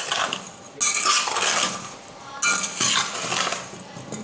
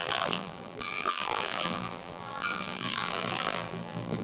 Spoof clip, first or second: second